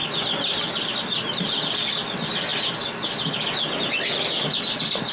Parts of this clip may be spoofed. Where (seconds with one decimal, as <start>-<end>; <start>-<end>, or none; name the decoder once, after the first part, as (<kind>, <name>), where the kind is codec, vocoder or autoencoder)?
none